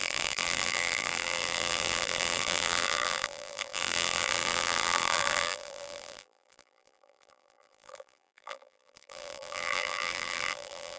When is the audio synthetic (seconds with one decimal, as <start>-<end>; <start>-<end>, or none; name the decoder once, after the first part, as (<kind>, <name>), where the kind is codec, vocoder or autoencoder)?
0.0-11.0 (vocoder, BigVGAN v2)